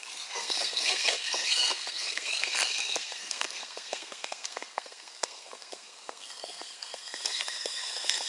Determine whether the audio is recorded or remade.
remade